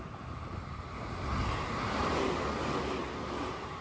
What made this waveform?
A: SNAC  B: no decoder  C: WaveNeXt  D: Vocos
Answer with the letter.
B